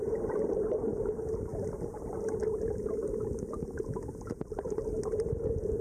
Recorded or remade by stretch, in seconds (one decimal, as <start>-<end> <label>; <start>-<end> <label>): 0.0-3.0 remade; 3.0-5.8 recorded